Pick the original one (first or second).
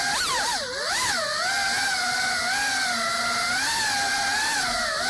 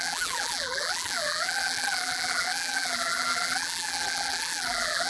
first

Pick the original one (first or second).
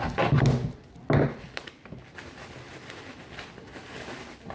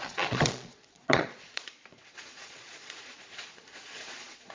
first